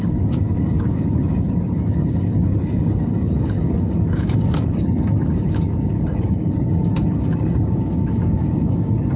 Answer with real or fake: fake